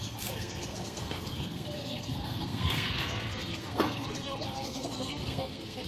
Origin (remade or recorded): remade